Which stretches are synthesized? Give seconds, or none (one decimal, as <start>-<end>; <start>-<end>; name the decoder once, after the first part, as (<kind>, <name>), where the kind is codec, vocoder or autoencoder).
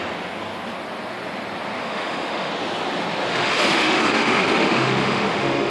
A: 1.8-2.5 (autoencoder, DAC-VAE); 3.3-5.7